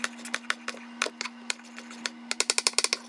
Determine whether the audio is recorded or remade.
recorded